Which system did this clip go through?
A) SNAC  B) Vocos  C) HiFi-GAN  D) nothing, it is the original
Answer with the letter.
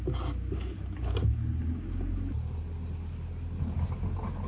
D